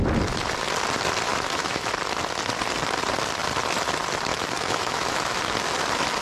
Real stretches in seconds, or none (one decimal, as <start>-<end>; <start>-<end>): 0.0-1.3; 1.9-4.3; 5.4-6.2